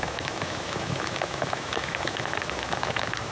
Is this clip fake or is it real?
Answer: fake